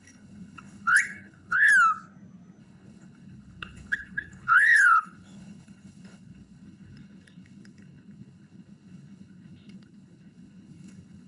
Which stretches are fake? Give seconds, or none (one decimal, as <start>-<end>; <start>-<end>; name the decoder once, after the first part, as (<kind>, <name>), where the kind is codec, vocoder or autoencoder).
0.0-1.7 (codec, HILCodec); 2.6-11.3